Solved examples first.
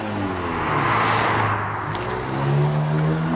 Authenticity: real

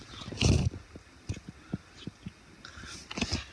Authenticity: real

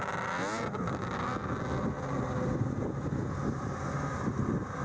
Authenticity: real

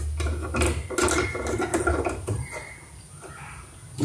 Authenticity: real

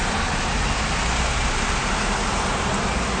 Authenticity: real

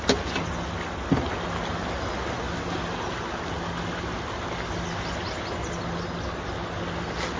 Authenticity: real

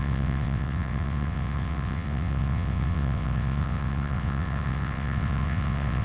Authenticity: fake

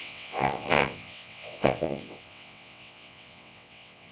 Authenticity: fake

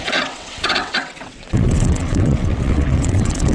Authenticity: fake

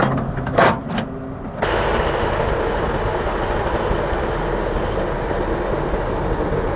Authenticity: real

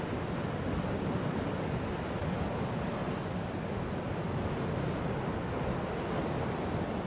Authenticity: real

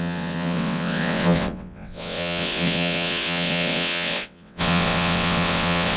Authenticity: fake